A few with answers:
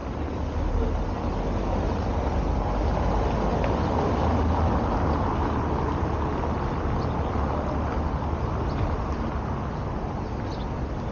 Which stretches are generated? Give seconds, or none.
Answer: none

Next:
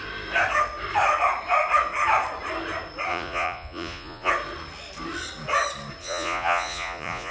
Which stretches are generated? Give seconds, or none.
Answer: 3.1-4.3; 6.0-7.3

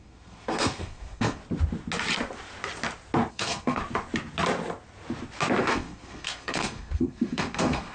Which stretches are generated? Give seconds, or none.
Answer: 0.0-1.4; 3.3-3.8; 5.6-7.9

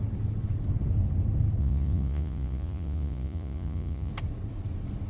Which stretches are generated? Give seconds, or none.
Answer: 1.6-4.1

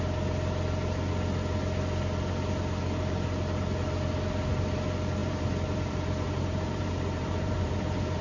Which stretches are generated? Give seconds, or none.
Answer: 5.2-8.2

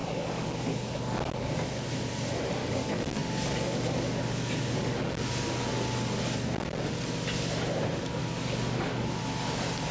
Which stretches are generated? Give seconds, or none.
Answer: 0.0-0.8; 2.6-5.3; 8.2-9.2